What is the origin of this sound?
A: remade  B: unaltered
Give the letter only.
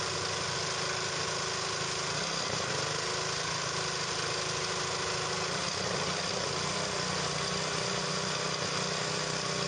B